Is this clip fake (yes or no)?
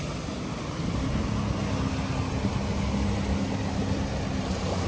no